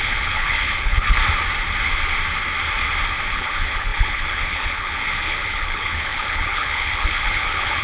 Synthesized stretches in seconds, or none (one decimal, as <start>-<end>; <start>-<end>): 0.0-1.2; 3.3-7.8